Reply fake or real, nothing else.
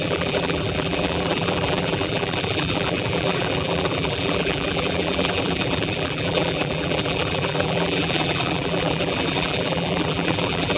fake